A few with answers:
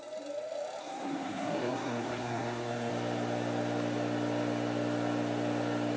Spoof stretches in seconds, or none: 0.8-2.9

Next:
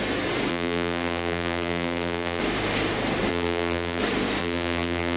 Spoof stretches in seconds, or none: 0.5-2.4; 3.3-4.0; 4.4-5.2

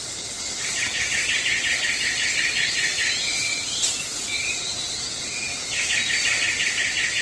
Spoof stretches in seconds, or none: 0.9-4.4

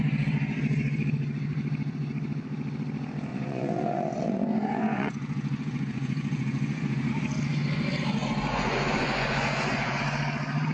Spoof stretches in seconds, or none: 3.3-7.1; 8.2-10.0